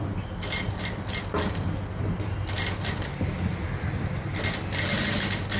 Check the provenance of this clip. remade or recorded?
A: recorded